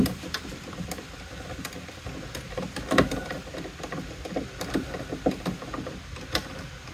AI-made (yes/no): no